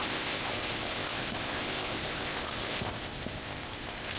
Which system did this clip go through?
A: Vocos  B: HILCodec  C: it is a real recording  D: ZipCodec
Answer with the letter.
D